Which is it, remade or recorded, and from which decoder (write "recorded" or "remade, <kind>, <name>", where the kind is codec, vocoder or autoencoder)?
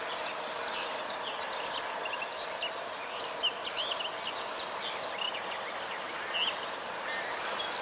recorded